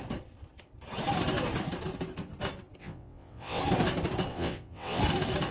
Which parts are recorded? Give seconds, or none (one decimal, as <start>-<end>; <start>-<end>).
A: 0.0-2.8; 3.6-4.3; 5.0-5.5